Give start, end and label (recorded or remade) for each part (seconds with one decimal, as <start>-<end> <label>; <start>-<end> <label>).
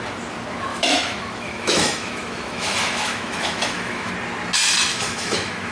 0.0-0.7 recorded; 0.7-4.1 remade; 4.1-4.9 recorded; 4.9-5.7 remade